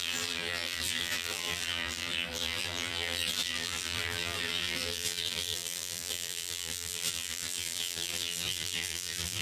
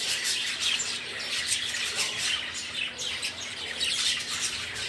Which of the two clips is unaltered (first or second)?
second